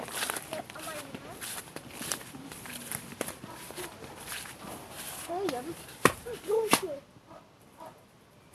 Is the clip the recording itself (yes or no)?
no